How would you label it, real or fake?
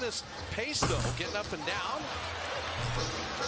real